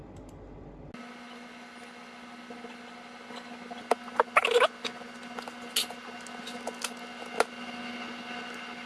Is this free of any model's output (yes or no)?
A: yes